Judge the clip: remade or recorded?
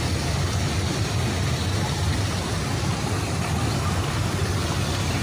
recorded